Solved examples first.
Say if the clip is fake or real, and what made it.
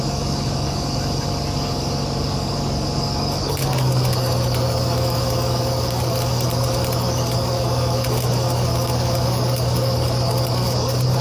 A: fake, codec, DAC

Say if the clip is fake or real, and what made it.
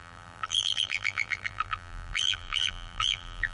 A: fake, vocoder, BigVGAN v2